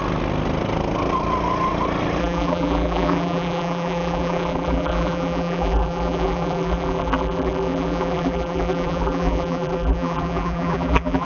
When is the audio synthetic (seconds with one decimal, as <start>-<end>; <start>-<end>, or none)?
2.2-11.2